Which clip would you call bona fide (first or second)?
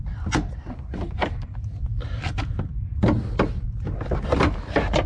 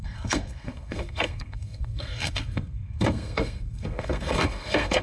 first